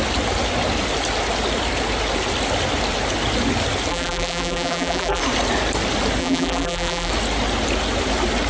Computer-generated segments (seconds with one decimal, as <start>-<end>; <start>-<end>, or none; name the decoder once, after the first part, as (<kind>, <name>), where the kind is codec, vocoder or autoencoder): 3.9-5.2 (vocoder, BigVGAN v2); 6.2-7.1